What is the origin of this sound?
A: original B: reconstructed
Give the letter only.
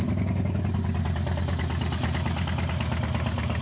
A